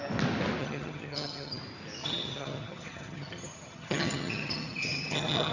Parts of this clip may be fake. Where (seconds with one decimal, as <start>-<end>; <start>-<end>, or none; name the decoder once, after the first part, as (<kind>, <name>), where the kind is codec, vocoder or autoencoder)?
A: 0.6-1.6 (vocoder, HiFi-GAN); 2.0-5.5